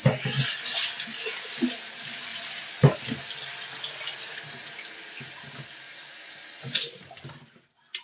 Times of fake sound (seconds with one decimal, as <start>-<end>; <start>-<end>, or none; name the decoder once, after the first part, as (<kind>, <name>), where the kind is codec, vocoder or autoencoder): none